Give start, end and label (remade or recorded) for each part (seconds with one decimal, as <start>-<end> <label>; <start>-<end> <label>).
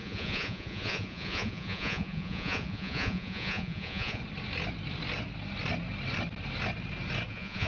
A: 0.0-4.2 remade; 4.2-7.3 recorded; 7.3-7.7 remade